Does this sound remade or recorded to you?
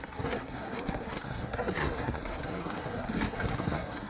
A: remade